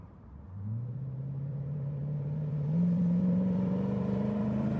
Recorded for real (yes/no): no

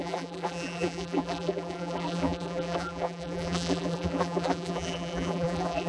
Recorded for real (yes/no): no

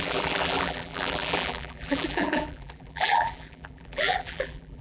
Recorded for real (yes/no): no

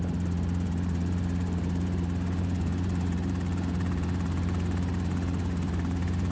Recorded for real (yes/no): no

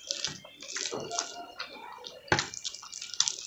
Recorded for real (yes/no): yes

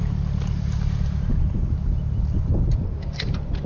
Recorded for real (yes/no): yes